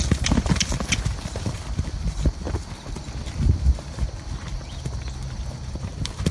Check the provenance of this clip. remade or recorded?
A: recorded